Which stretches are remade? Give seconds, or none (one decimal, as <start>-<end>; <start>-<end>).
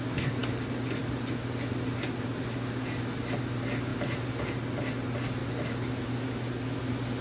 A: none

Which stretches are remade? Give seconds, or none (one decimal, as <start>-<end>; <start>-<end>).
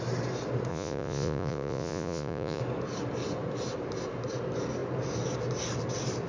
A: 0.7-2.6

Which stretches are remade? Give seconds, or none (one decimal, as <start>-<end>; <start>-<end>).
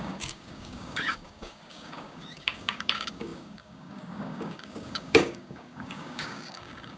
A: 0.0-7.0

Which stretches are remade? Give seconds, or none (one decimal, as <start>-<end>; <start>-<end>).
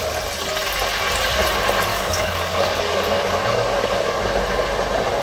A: 1.9-4.2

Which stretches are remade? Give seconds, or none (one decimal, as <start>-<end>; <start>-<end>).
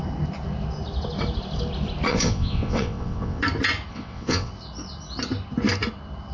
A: 2.1-3.4; 3.9-4.5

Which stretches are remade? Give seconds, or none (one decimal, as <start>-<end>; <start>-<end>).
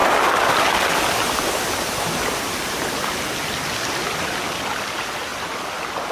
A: none